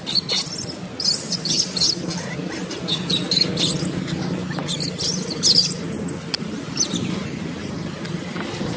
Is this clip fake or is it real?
real